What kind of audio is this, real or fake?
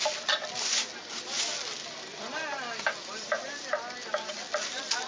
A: real